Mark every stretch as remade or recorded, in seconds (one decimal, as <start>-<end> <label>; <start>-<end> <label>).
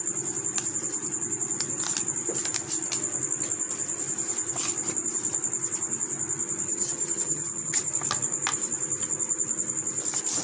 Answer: 0.0-6.7 recorded; 6.7-7.9 remade; 7.9-10.4 recorded